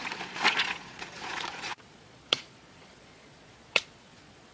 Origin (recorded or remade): remade